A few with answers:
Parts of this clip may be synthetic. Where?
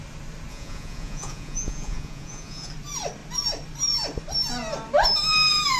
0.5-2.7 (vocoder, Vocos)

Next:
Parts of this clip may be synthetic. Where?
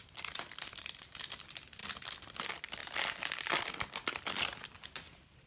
0.0-1.8 (vocoder, BigVGAN v2); 2.4-2.8; 3.6-5.5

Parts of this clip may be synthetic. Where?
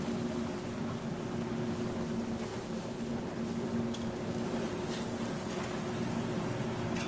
2.5-3.1 (vocoder, BigVGAN v2)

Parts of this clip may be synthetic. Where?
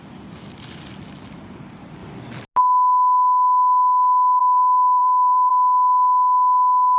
4.4-5.5 (vocoder, BigVGAN v2)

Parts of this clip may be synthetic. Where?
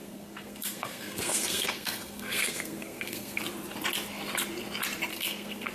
0.0-3.4 (codec, SNAC); 5.1-5.7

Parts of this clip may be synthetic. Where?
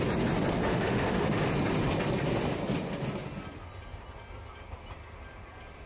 0.6-1.5 (autoencoder, DAC-VAE)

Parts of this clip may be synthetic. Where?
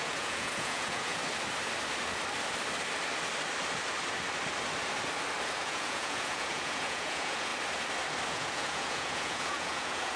0.0-1.2 (vocoder, Vocos); 5.5-7.5; 8.3-10.2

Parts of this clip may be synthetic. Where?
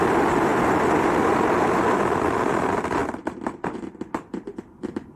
0.0-0.5 (vocoder, BigVGAN v2); 2.0-3.0; 4.8-5.2